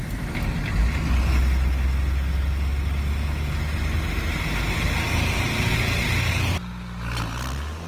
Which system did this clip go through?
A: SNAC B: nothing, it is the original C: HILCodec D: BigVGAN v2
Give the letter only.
B